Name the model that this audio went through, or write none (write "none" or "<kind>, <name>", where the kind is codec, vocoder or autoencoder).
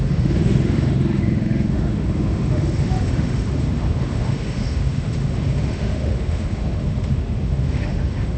autoencoder, DAC-VAE